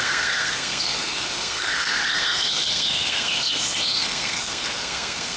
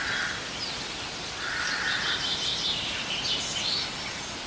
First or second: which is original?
second